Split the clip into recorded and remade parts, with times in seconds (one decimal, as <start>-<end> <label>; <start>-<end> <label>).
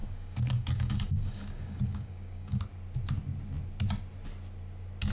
0.0-2.6 remade; 2.6-5.1 recorded